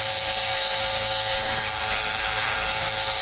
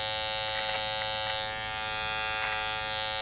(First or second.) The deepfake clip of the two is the first